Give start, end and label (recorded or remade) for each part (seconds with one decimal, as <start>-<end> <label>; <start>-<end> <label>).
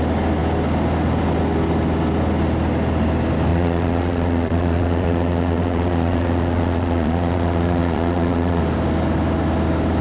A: 0.0-3.5 recorded; 3.5-8.6 remade; 8.6-10.0 recorded